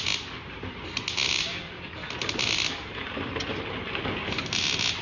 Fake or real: real